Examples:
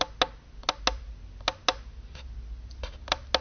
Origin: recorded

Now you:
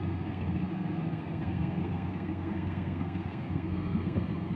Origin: remade